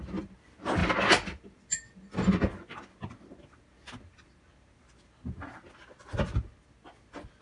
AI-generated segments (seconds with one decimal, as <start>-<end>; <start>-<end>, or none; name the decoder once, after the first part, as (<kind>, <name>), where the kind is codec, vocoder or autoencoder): none